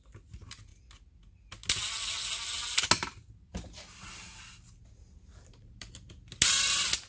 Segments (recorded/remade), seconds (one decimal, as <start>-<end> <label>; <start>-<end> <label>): 0.0-5.3 recorded; 5.3-5.9 remade; 5.9-7.1 recorded